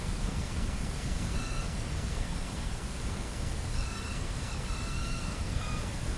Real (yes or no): no